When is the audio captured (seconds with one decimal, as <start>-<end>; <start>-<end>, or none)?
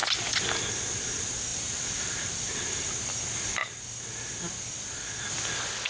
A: 0.0-1.5; 2.9-5.9